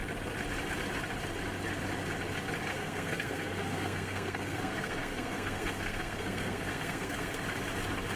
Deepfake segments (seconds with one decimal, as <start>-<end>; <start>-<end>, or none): 2.7-7.4